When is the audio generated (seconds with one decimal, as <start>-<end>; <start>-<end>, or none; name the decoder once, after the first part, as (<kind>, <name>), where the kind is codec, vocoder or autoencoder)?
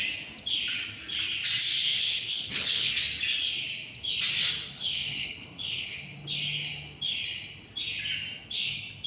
1.9-2.9 (codec, HILCodec); 4.8-6.0